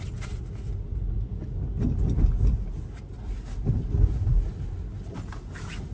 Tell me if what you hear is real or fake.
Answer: real